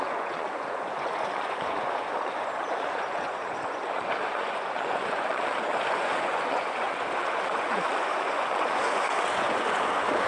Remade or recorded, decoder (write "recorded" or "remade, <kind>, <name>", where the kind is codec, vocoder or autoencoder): remade, vocoder, Vocos